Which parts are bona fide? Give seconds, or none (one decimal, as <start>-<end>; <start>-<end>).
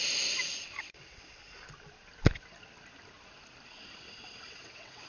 0.0-0.8; 1.4-4.5